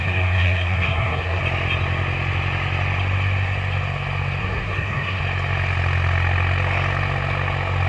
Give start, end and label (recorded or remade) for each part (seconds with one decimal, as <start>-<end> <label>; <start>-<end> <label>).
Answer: 0.0-1.4 remade; 1.4-4.4 recorded; 4.4-5.2 remade; 5.2-7.9 recorded